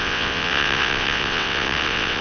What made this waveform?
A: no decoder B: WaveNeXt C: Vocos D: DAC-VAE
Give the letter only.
B